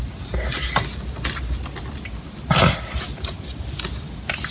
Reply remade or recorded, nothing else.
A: recorded